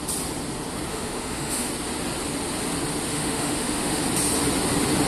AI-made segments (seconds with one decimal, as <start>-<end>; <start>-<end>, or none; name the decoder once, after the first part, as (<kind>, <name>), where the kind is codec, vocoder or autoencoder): 0.9-1.7 (autoencoder, DAC-VAE); 3.1-4.0